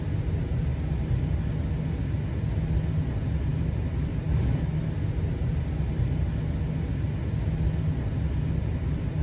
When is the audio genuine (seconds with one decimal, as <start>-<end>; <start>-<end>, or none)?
0.0-9.2